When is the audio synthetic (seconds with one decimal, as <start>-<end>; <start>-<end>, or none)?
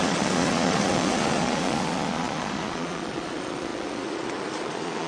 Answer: 0.0-5.1